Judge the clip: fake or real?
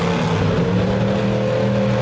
real